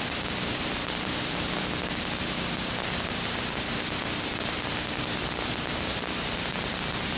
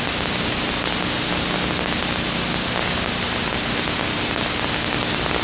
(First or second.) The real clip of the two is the second